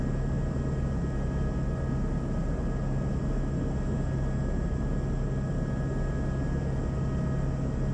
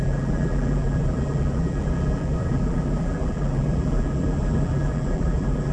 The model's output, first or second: second